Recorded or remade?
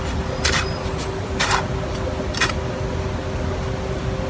recorded